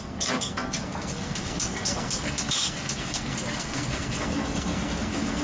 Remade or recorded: remade